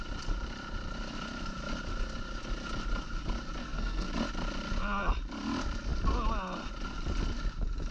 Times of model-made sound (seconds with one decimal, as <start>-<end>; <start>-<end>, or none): 3.6-4.1